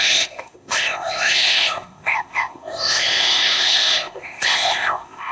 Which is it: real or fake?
fake